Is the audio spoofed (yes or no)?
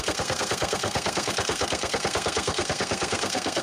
yes